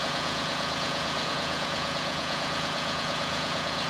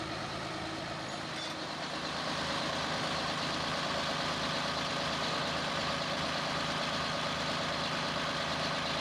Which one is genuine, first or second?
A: second